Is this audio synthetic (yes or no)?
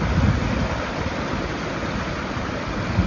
no